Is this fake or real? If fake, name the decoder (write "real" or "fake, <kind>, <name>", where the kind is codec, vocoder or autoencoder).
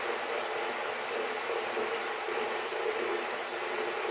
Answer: real